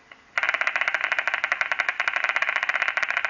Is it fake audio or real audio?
real